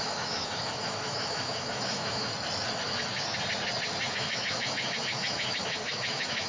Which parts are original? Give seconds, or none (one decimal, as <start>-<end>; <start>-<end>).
2.3-4.1